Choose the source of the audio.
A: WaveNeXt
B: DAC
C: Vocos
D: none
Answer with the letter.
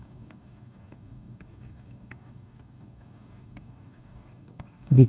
B